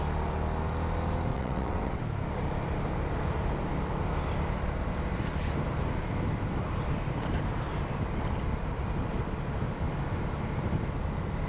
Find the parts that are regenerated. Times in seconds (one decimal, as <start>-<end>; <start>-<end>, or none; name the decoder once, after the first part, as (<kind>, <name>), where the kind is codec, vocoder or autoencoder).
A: 1.3-2.0 (vocoder, WaveNeXt)